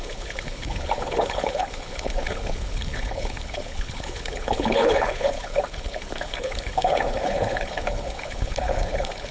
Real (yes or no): no